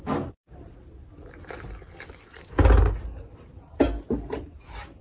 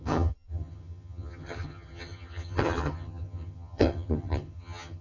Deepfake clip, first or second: second